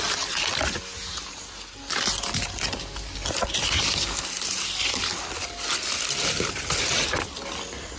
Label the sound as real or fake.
real